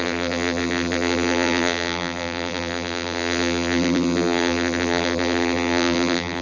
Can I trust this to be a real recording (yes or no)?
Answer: no